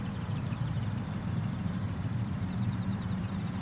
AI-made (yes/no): yes